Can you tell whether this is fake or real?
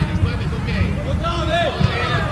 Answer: fake